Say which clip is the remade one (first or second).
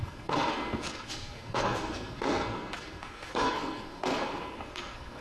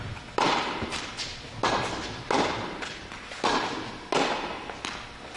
first